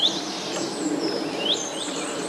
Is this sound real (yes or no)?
no